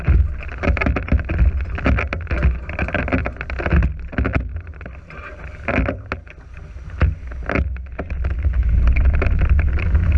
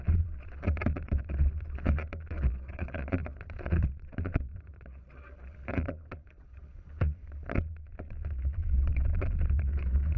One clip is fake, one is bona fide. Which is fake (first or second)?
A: second